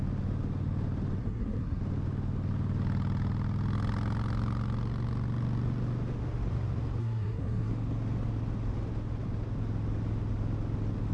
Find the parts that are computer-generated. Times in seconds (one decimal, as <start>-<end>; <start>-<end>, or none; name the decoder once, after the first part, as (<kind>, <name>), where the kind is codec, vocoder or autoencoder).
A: 1.2-1.8 (codec, SNAC); 7.0-7.7